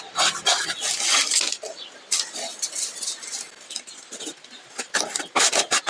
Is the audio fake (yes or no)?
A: no